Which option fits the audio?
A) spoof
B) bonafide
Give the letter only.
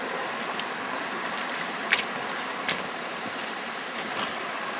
B